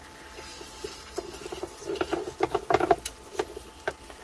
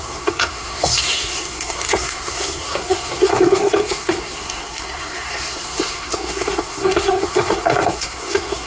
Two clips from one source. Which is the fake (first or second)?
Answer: second